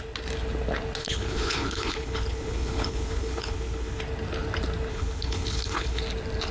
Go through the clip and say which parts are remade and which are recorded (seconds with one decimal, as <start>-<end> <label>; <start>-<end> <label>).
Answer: 0.0-1.0 recorded; 1.0-4.0 remade; 4.0-4.9 recorded; 4.9-6.0 remade; 6.0-6.5 recorded